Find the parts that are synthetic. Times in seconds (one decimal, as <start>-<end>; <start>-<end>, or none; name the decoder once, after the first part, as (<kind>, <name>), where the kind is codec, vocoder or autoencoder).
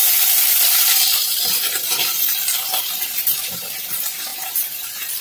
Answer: 0.0-2.8 (vocoder, BigVGAN v2); 4.3-5.2